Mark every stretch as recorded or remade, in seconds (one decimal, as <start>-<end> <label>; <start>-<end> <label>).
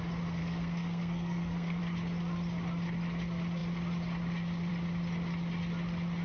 0.0-0.4 recorded; 0.4-1.8 remade; 1.8-6.2 recorded